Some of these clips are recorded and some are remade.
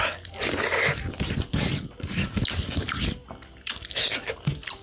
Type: recorded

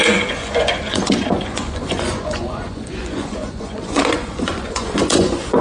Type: remade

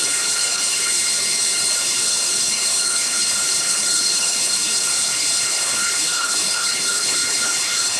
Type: remade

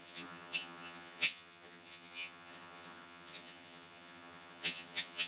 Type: remade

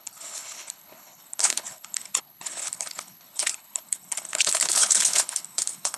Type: remade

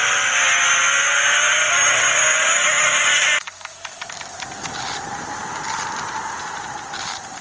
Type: recorded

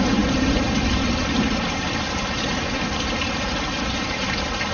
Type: remade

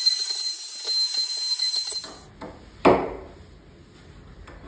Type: recorded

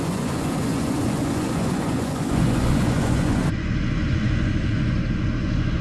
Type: remade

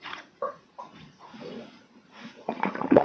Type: remade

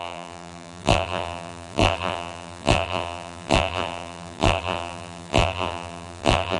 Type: remade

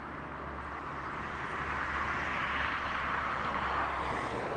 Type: recorded